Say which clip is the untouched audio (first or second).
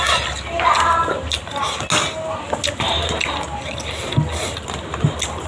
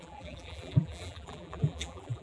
first